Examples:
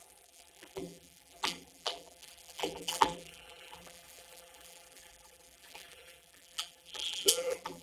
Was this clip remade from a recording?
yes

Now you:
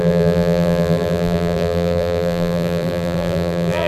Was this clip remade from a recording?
yes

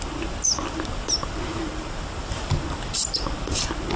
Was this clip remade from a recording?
no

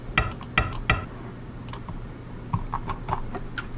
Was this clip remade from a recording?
no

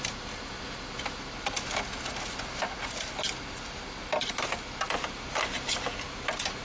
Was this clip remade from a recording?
no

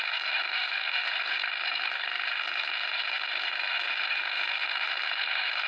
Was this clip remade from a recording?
yes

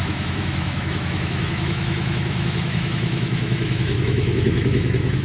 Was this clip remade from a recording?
yes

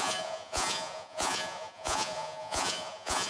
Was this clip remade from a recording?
yes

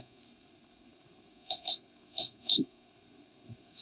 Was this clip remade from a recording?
yes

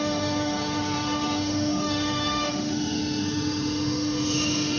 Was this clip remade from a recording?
yes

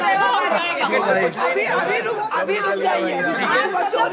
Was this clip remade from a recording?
no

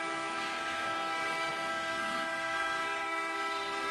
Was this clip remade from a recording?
yes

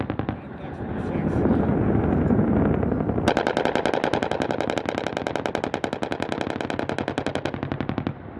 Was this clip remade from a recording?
no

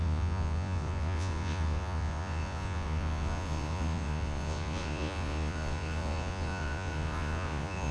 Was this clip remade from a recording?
yes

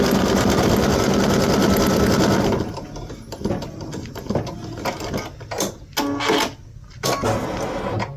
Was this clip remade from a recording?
no